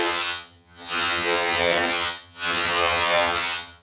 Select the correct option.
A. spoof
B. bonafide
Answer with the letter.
A